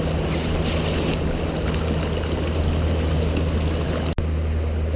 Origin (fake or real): real